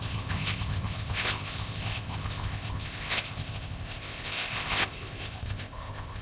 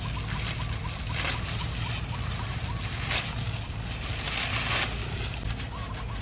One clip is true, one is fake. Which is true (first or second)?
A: second